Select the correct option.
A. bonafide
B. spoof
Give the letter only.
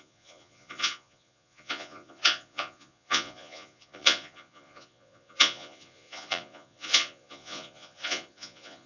B